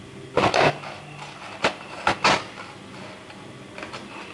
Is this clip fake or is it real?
real